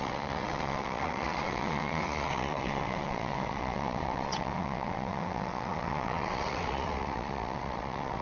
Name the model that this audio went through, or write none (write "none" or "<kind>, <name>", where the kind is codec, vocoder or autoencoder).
vocoder, WaveNeXt